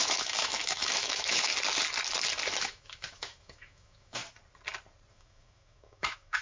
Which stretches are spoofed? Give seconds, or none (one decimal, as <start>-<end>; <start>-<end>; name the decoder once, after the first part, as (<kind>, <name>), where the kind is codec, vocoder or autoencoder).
0.0-1.5 (autoencoder, DAC-VAE); 2.6-4.2; 5.1-6.4